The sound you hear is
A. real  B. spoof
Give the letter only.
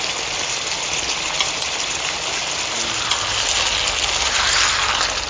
A